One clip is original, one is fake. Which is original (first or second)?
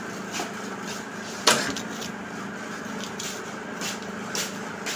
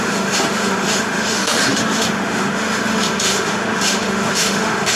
first